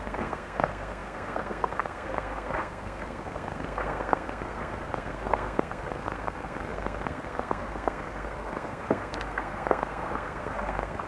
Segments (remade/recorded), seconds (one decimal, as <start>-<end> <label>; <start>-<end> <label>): 0.0-11.1 remade